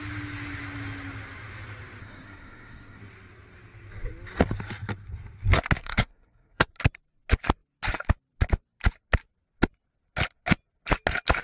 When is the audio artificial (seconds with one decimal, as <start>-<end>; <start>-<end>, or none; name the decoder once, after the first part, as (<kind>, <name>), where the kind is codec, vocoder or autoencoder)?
2.0-3.0 (codec, SNAC); 5.8-6.7